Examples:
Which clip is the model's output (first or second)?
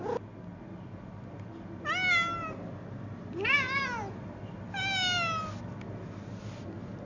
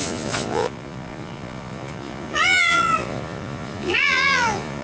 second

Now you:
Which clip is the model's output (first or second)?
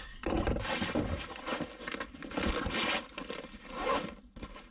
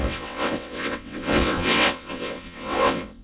second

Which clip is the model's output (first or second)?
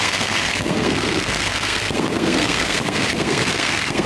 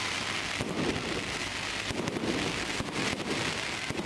first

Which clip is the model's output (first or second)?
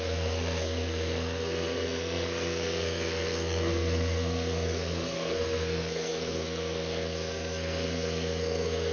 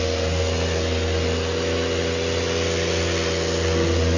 first